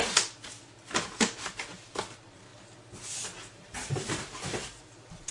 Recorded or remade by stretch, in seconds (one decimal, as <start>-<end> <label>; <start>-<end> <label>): 0.0-2.5 remade; 2.5-3.2 recorded; 3.2-5.3 remade

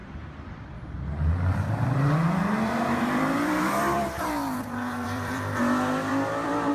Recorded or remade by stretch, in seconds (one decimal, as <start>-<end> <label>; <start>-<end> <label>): 0.0-6.7 remade

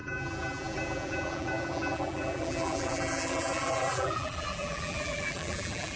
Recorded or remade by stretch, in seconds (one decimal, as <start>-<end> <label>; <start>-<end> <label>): 0.0-6.0 remade